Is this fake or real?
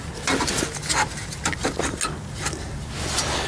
real